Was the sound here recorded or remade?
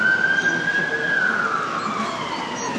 recorded